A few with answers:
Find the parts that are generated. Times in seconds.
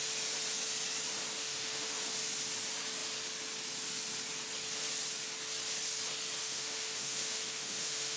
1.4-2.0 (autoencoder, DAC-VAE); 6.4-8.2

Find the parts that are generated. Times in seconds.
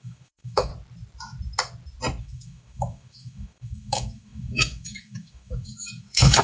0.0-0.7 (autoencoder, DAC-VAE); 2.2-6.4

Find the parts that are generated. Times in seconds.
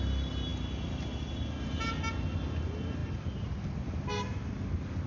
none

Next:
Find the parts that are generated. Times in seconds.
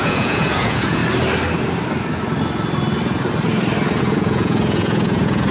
0.0-1.0 (vocoder, Vocos); 4.0-5.5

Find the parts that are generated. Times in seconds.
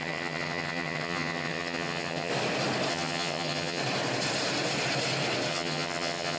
0.0-2.3 (vocoder, HiFi-GAN); 2.9-3.8; 5.5-6.4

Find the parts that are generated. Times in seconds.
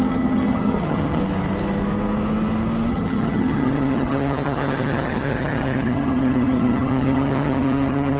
0.0-1.2 (vocoder, HiFi-GAN); 2.9-8.2